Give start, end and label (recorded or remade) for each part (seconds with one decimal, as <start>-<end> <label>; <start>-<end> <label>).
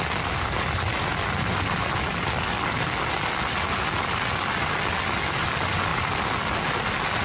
0.0-7.2 recorded